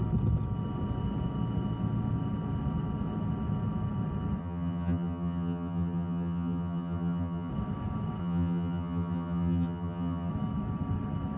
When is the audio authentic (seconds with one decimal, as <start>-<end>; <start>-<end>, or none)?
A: 0.0-4.4; 7.5-8.2; 10.3-11.4

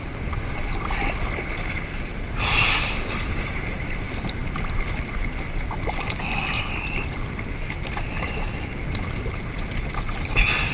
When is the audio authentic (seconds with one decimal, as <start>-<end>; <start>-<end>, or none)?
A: 0.0-10.7